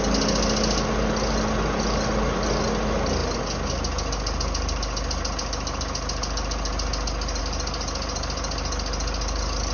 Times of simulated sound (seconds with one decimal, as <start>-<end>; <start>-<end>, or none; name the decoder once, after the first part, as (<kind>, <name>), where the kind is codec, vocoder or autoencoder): none